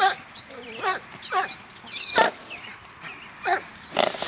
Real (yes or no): yes